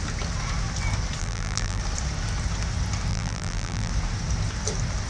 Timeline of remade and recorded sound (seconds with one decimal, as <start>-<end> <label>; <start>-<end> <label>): 0.0-1.2 recorded; 1.2-1.8 remade; 1.8-3.1 recorded; 3.1-3.9 remade; 3.9-5.1 recorded